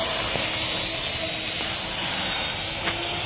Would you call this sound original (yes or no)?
yes